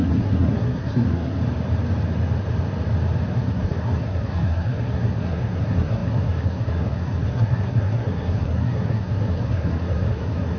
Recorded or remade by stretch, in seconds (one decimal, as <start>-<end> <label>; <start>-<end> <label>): 0.0-1.4 remade; 1.4-3.3 recorded; 3.3-10.6 remade